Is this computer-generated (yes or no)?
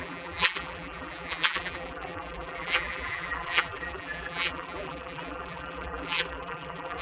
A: yes